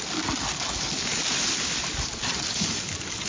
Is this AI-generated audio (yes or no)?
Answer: no